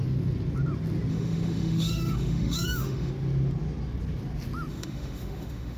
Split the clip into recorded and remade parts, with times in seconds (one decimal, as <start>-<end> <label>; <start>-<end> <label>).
0.0-1.1 recorded; 1.1-3.1 remade; 3.1-4.7 recorded; 4.7-5.8 remade